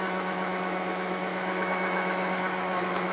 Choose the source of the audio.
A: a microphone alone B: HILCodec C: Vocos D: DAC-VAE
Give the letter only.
D